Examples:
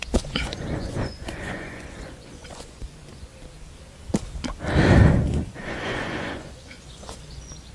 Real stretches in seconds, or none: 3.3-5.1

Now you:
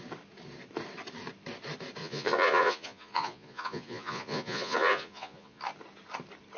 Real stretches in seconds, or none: 0.0-2.0; 5.6-6.6

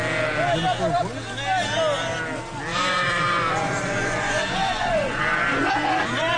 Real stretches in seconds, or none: 0.0-2.7

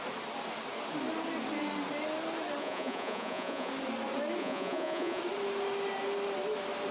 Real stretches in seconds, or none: 0.0-2.6; 3.7-4.4; 5.2-6.9

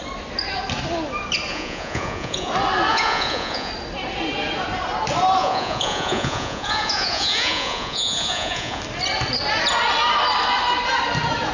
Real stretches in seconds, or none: 0.0-1.5; 2.5-2.9; 3.7-5.4; 8.8-11.5

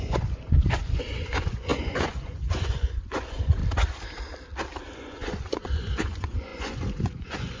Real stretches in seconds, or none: 3.6-4.8

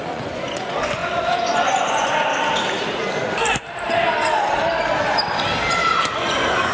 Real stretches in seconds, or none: 2.3-5.8

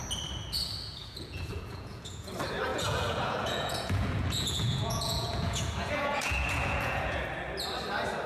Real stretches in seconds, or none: 0.0-1.0; 2.3-2.7; 7.2-8.3